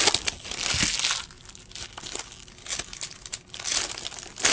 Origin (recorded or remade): recorded